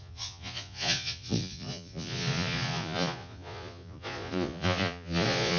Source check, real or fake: fake